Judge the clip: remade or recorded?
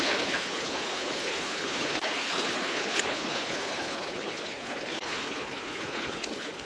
remade